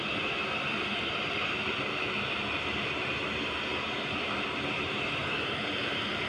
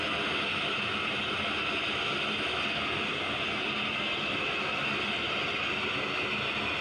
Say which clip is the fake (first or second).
first